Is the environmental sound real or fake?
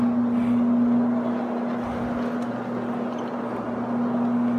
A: real